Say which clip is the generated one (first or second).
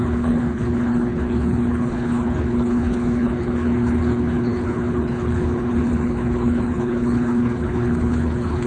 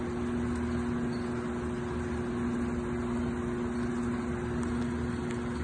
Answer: first